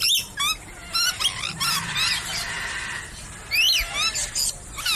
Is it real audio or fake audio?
real